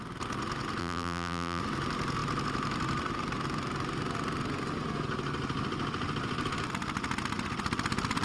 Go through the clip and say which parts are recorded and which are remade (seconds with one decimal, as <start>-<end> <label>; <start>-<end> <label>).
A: 0.0-0.8 recorded; 0.8-1.6 remade; 1.6-8.2 recorded